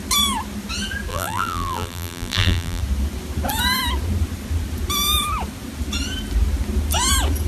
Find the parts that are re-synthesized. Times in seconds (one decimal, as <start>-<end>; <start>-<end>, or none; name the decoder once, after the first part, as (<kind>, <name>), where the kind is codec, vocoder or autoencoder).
1.1-2.8 (vocoder, BigVGAN v2)